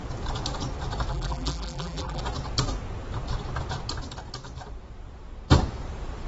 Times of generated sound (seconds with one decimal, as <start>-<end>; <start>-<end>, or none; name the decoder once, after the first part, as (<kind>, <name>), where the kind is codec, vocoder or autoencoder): 1.1-2.2 (vocoder, BigVGAN v2)